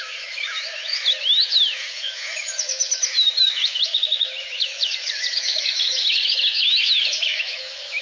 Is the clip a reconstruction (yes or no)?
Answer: yes